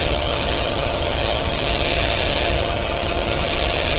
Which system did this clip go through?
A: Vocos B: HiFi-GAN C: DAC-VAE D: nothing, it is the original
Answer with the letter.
B